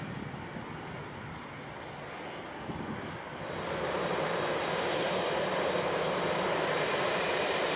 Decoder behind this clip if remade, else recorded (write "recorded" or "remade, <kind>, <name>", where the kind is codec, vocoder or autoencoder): recorded